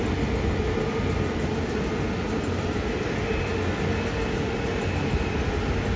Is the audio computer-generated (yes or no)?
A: no